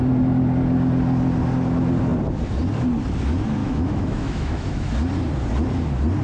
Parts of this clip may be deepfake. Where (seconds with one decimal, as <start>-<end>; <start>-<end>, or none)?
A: 3.6-4.9